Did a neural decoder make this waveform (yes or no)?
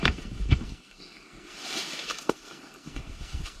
yes